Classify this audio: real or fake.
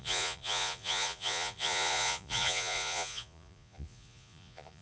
fake